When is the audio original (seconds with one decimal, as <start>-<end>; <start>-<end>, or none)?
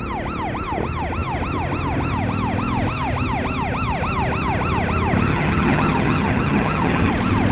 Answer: 0.0-5.3; 7.1-7.5